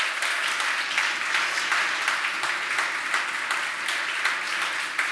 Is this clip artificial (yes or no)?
no